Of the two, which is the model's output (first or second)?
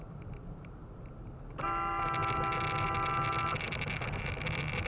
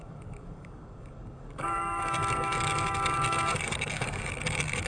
second